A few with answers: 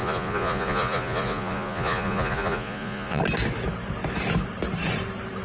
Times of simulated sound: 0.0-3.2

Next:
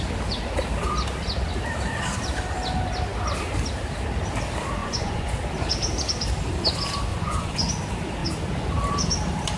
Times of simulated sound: 4.8-5.3; 7.1-7.7

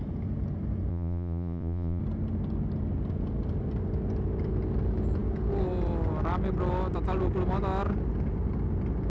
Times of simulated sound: 0.9-2.0